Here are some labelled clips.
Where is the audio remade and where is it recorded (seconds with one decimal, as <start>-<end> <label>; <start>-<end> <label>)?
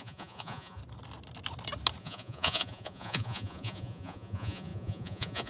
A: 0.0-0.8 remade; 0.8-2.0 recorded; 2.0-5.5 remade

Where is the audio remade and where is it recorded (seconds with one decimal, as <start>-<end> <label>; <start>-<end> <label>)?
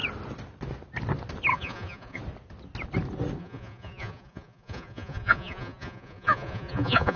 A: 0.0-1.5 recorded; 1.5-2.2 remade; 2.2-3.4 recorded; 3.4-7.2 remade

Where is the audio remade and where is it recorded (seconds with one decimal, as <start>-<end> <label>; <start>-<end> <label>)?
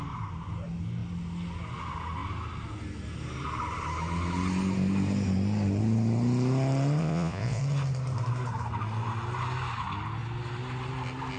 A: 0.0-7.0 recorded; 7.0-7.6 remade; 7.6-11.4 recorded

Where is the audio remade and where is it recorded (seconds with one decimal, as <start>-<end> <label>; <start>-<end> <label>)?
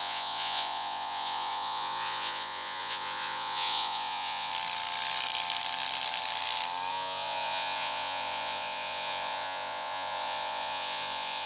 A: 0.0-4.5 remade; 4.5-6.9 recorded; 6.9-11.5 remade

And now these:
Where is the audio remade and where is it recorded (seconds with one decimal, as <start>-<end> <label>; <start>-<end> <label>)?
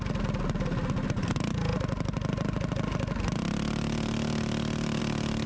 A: 0.0-5.5 recorded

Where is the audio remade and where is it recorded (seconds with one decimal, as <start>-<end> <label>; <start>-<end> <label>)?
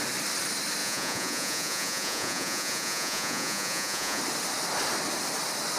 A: 0.0-0.8 recorded; 0.8-4.2 remade; 4.2-5.8 recorded